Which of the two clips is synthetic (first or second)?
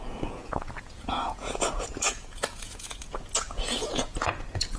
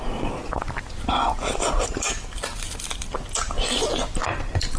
first